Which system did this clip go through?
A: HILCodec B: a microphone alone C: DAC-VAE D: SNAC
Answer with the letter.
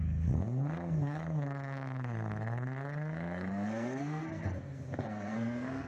D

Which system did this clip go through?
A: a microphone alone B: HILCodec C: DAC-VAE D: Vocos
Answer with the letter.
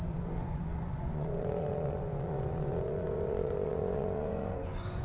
D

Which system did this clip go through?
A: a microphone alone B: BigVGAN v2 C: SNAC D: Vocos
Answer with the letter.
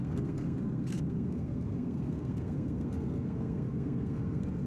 C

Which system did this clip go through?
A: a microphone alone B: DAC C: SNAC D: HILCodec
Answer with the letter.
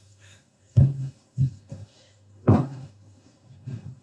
C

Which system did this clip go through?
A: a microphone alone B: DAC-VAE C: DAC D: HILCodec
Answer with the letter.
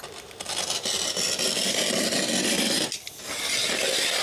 A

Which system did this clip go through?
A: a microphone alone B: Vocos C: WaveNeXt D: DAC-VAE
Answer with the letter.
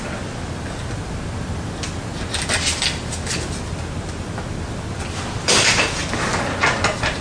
A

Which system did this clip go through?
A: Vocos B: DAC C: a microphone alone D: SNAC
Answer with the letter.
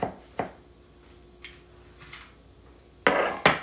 C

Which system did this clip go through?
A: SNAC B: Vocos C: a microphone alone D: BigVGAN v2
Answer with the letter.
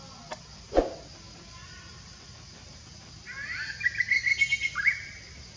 C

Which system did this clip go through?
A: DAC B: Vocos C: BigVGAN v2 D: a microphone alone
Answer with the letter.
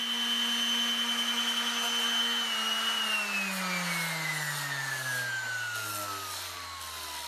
D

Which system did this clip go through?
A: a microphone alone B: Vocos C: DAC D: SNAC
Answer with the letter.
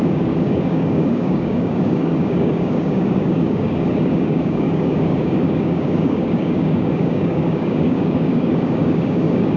C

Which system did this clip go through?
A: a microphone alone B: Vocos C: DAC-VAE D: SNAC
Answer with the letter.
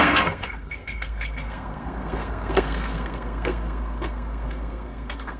D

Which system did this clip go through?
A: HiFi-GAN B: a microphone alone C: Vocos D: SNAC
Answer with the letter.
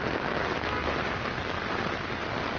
B